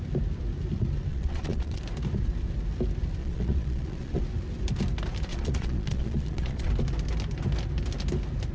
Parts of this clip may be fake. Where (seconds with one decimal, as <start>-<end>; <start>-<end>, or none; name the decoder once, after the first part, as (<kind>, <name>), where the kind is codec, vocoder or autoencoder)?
1.1-1.8 (vocoder, Vocos); 3.2-4.2; 5.3-6.7